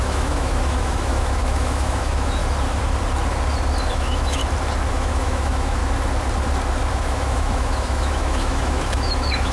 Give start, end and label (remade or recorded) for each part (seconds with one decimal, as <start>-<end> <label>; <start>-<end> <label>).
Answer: 0.0-2.4 remade; 2.4-3.9 recorded; 3.9-4.4 remade; 4.4-4.9 recorded; 4.9-5.8 remade; 5.8-6.9 recorded; 6.9-9.5 remade